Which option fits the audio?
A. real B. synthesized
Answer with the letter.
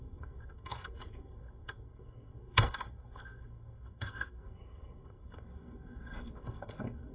B